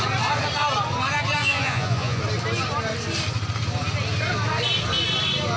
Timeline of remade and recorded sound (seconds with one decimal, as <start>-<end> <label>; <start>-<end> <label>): 0.0-1.4 recorded; 1.4-2.2 remade; 2.2-5.6 recorded